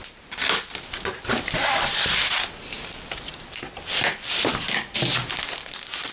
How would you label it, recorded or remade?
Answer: recorded